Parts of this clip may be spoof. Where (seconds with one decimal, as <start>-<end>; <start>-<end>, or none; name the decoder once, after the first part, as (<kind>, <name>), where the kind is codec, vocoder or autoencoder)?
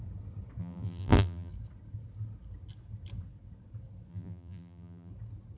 0.6-1.5 (vocoder, BigVGAN v2); 4.1-5.1